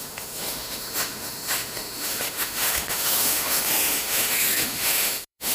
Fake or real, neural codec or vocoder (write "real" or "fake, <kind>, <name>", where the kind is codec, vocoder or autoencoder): fake, autoencoder, DAC-VAE